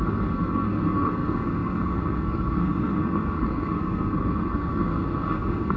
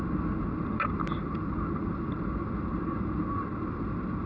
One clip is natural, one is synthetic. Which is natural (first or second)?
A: second